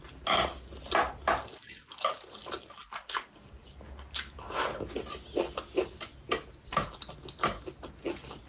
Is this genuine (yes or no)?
yes